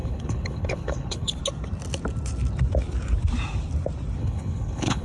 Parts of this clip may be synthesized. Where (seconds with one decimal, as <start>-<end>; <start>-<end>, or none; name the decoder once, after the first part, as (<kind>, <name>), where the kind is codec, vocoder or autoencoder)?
0.0-1.4 (codec, HILCodec); 4.2-5.0